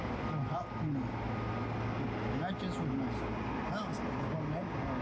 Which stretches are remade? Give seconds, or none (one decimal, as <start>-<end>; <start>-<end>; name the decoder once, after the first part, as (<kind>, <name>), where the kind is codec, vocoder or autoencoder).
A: none